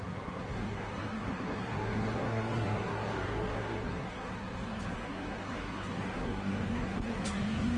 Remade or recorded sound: remade